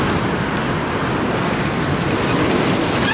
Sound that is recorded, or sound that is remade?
recorded